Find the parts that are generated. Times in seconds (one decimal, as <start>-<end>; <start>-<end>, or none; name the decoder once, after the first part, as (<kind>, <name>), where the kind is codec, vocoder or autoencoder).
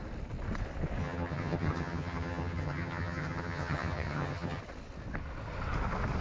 1.0-4.6 (vocoder, HiFi-GAN)